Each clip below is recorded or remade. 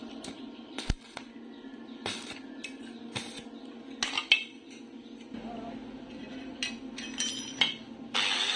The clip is recorded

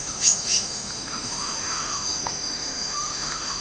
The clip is remade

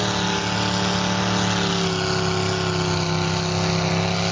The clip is recorded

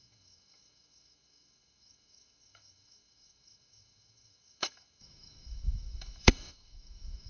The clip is remade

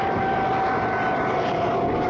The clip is recorded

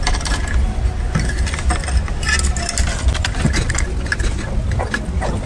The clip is recorded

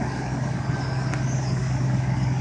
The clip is remade